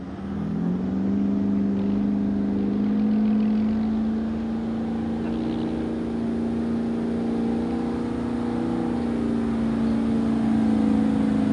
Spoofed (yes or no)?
no